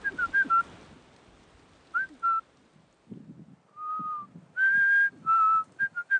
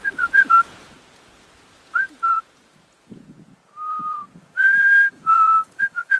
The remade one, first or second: second